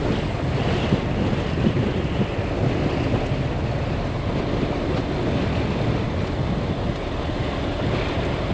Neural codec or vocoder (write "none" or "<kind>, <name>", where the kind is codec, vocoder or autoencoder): none